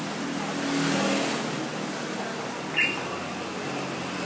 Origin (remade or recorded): recorded